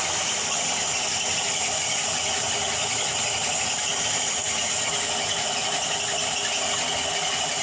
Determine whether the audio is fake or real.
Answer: real